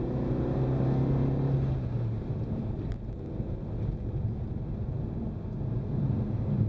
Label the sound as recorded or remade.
recorded